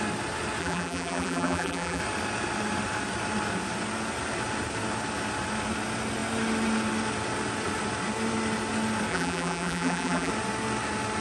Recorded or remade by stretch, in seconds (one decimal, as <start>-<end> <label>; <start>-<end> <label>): 0.0-0.6 recorded; 0.6-2.0 remade; 2.0-9.1 recorded; 9.1-10.3 remade; 10.3-11.2 recorded